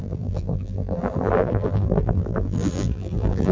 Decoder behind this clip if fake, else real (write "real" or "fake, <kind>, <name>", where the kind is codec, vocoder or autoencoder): fake, vocoder, BigVGAN v2